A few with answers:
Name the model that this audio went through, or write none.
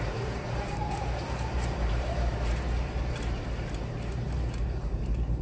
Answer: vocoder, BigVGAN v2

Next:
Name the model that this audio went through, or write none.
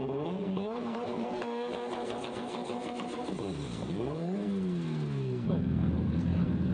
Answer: codec, SNAC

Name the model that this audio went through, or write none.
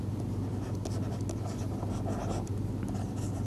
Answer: none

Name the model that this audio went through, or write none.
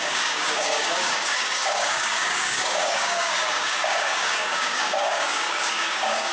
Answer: codec, DAC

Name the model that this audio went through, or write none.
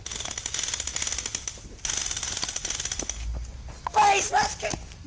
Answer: none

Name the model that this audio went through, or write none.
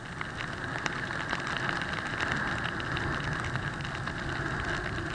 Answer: none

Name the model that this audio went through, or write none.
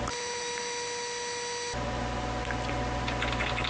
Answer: none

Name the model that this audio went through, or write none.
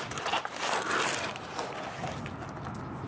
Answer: none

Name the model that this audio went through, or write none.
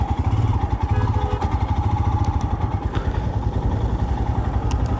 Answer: none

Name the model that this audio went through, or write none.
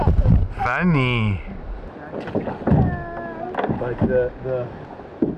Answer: none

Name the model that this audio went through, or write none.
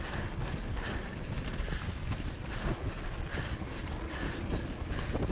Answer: none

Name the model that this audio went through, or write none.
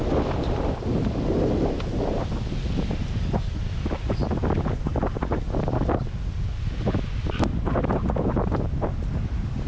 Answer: none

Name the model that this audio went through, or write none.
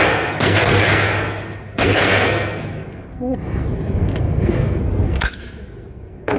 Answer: codec, SNAC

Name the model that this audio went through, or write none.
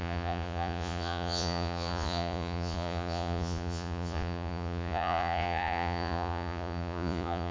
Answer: vocoder, Vocos